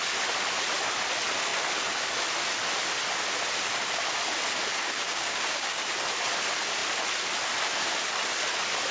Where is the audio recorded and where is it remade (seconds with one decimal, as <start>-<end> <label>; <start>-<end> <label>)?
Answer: 0.0-4.7 recorded; 4.7-5.9 remade; 5.9-8.9 recorded